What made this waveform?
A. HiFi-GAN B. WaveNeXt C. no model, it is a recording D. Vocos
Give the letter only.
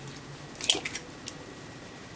C